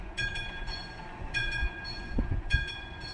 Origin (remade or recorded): remade